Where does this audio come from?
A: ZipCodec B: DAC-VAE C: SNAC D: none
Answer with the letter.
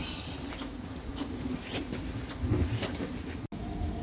D